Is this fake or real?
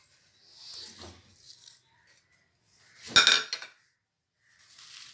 real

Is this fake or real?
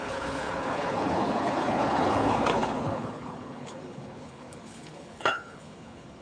fake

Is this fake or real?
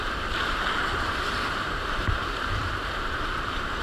fake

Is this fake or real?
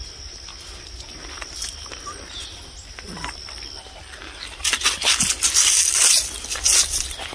real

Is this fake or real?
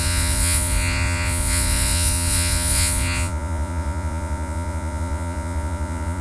fake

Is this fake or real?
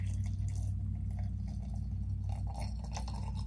real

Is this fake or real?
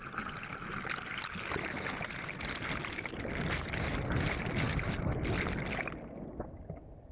real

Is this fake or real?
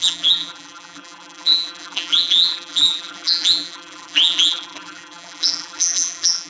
fake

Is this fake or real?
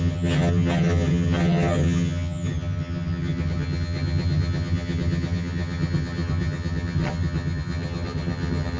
fake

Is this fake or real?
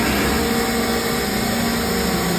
real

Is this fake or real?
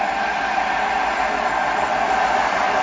real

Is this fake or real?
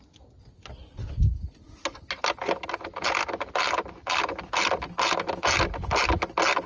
real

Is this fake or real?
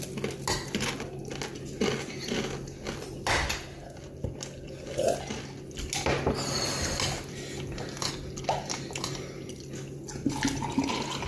real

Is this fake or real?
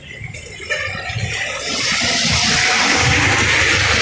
real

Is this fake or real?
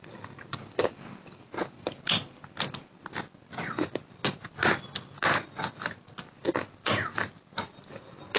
real